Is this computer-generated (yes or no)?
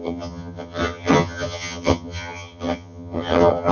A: yes